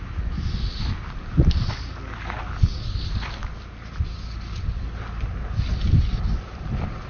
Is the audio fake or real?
real